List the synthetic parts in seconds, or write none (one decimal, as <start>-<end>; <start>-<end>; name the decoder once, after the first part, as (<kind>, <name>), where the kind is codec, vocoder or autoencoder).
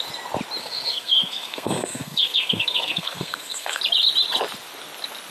0.6-3.8 (codec, SNAC)